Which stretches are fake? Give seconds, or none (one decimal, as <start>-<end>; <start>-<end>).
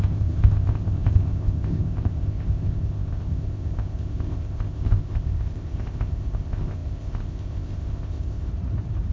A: 0.0-8.5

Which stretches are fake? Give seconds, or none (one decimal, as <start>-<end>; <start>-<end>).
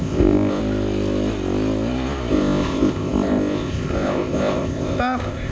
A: 0.0-0.6; 2.3-5.5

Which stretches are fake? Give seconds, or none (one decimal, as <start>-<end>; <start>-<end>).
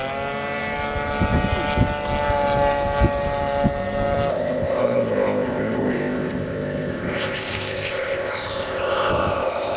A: 4.3-9.8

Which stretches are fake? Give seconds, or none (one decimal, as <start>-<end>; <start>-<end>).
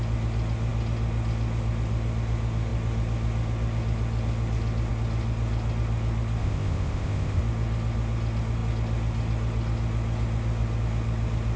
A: 6.4-7.4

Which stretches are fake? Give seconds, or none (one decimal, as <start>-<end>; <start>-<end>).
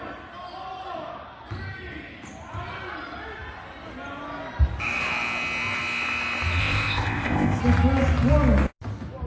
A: 6.6-7.6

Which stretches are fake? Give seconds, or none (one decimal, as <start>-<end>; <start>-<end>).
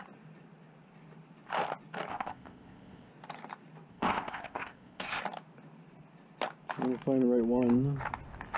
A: 2.1-3.1; 3.9-5.2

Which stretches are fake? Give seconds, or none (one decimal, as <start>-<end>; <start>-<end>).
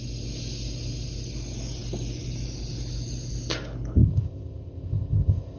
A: 4.0-5.6